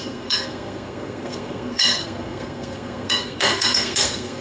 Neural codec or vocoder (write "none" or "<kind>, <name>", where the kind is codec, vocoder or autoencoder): codec, SNAC